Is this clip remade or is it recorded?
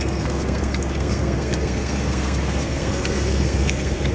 remade